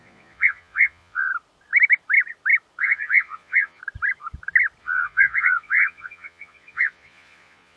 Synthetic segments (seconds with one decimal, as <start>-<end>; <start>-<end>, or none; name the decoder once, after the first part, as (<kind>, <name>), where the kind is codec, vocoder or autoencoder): 0.0-1.3 (vocoder, Vocos); 2.8-3.8; 4.8-7.8